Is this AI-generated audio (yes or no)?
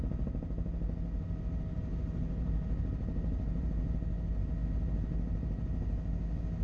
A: no